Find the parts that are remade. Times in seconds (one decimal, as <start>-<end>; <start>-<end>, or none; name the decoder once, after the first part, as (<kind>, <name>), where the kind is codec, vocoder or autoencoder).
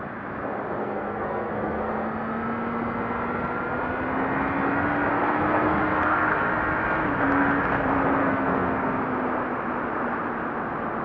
0.8-1.9 (codec, SNAC); 5.1-6.5; 8.2-9.0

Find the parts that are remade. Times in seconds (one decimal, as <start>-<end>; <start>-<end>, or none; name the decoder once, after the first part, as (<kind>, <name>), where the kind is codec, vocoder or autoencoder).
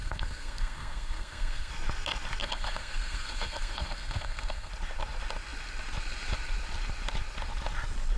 0.0-1.7 (codec, SNAC); 2.4-4.7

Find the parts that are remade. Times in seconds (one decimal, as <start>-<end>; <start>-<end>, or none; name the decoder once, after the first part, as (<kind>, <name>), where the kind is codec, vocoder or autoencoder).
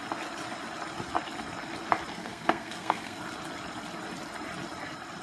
2.1-3.2 (codec, SNAC)